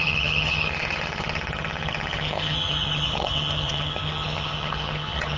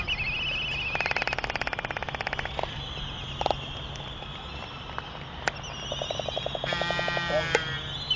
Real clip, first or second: second